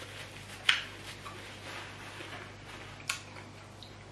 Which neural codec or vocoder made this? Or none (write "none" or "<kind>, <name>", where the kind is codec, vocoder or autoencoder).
none